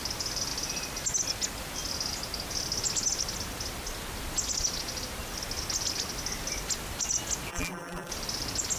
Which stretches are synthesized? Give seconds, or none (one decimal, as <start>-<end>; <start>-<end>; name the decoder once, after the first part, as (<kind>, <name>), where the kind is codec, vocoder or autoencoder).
7.5-8.1 (vocoder, BigVGAN v2)